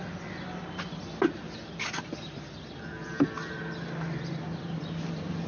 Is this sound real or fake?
real